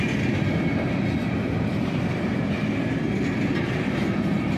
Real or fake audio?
real